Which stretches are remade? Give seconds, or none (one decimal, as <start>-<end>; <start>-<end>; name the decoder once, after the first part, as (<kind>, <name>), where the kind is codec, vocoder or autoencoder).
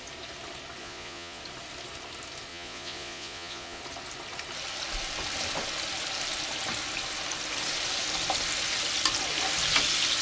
0.8-1.4 (vocoder, Vocos); 2.5-3.8